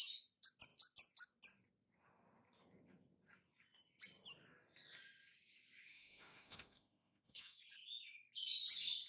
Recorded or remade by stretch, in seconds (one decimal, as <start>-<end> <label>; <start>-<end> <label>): 0.0-5.9 recorded; 5.9-7.6 remade; 7.6-9.1 recorded